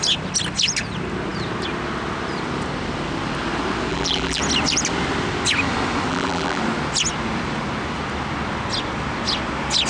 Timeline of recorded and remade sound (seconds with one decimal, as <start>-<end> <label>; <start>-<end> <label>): 0.0-3.9 recorded; 3.9-4.4 remade; 4.4-6.1 recorded; 6.1-6.6 remade; 6.6-9.9 recorded